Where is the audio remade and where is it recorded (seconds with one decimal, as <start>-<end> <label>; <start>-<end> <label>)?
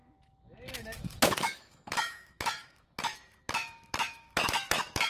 0.0-5.1 remade